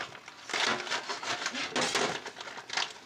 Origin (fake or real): real